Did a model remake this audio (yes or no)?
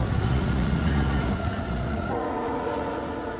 yes